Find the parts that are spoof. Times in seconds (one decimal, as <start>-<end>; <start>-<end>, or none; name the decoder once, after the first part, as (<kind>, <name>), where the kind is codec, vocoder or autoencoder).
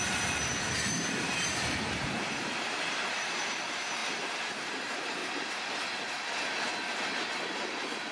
0.0-4.0 (vocoder, BigVGAN v2); 4.5-5.2